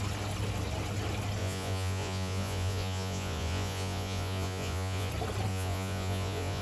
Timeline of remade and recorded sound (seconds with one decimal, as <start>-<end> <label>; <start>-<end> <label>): 0.0-1.4 recorded; 1.4-5.1 remade; 5.1-5.5 recorded; 5.5-6.6 remade